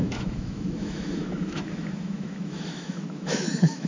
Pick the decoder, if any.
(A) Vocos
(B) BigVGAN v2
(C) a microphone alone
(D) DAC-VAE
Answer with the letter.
D